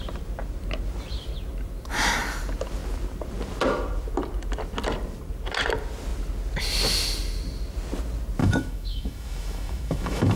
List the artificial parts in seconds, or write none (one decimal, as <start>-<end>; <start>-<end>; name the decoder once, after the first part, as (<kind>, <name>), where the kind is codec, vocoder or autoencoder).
8.4-10.4 (autoencoder, DAC-VAE)